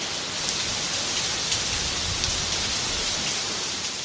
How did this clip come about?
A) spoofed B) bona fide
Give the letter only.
B